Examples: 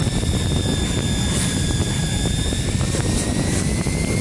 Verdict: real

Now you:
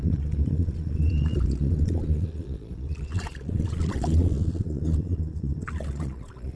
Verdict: fake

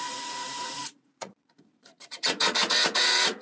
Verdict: fake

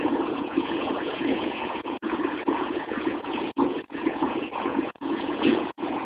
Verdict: fake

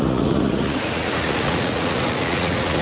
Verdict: fake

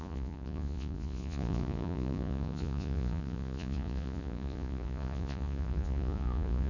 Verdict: fake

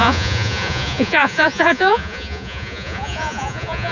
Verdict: fake